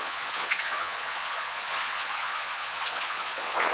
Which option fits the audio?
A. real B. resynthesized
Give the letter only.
B